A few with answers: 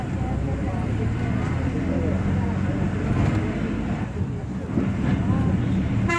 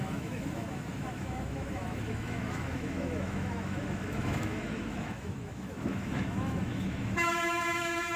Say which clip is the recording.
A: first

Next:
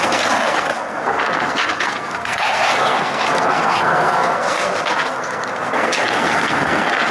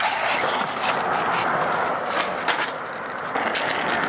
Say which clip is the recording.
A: second